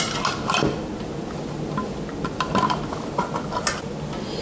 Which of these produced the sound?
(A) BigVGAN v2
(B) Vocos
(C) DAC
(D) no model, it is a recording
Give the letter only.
D